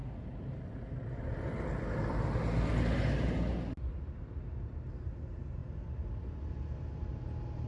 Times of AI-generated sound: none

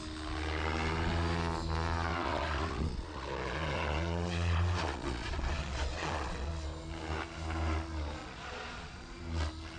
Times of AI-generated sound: 2.1-6.5 (vocoder, Vocos); 8.2-9.2

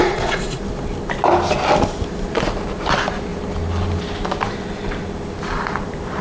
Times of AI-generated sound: 0.0-0.6 (vocoder, Vocos)